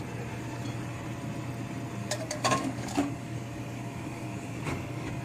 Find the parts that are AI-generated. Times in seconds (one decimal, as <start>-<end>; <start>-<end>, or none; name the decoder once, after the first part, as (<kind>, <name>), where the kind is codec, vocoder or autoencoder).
2.0-5.2 (codec, DAC)